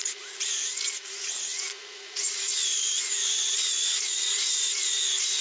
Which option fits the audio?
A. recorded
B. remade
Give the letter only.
B